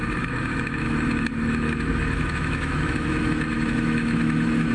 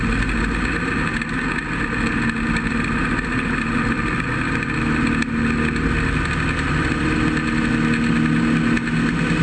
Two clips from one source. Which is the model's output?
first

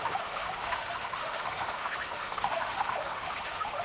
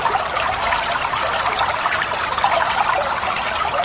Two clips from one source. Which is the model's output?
first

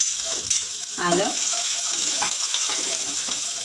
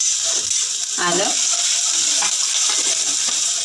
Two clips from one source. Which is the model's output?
first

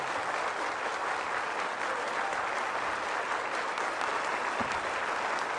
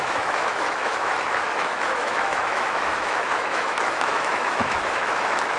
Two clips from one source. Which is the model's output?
second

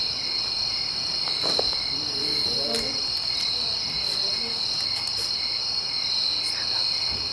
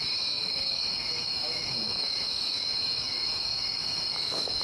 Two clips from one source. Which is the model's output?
second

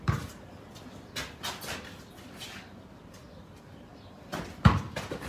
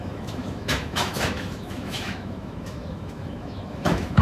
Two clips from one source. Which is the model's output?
second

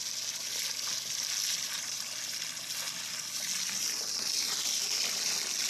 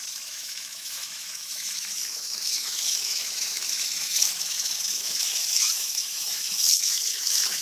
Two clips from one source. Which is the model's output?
second